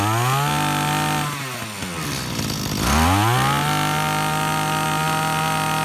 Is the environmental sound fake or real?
real